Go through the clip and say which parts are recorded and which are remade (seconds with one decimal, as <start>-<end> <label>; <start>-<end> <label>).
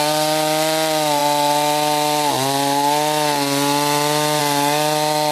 0.0-5.3 recorded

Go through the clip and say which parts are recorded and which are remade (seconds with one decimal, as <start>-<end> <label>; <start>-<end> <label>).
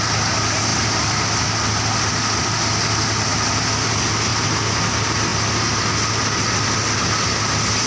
0.0-7.9 recorded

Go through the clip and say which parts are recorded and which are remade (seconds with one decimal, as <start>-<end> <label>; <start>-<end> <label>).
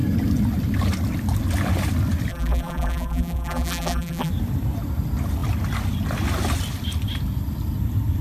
0.0-2.3 recorded; 2.3-4.3 remade; 4.3-8.2 recorded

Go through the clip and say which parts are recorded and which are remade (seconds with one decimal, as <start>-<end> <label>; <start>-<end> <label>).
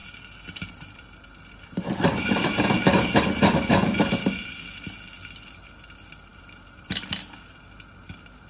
0.0-2.1 remade; 2.1-6.3 recorded; 6.3-7.0 remade; 7.0-8.5 recorded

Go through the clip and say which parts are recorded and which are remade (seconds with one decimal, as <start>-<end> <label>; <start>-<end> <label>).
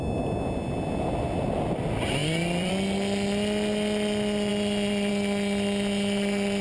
0.0-2.2 recorded; 2.2-2.7 remade; 2.7-4.5 recorded; 4.5-5.1 remade; 5.1-6.6 recorded